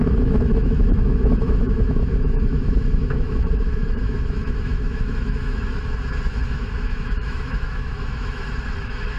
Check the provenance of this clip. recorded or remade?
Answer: remade